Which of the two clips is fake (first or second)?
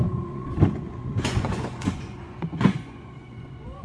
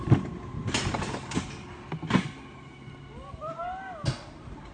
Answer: first